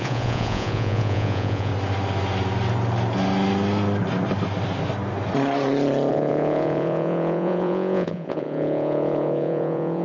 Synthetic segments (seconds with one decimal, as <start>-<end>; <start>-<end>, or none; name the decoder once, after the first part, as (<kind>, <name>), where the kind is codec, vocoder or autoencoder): 0.0-1.7 (vocoder, Vocos); 6.1-10.0